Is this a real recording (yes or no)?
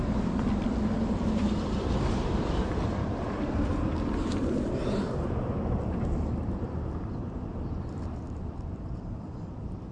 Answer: no